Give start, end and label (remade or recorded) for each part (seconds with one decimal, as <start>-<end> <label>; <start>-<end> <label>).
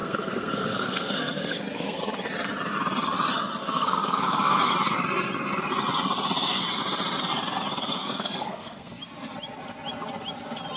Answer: 0.0-2.0 remade; 2.0-3.6 recorded; 3.6-4.7 remade; 4.7-8.0 recorded; 8.0-9.0 remade; 9.0-10.8 recorded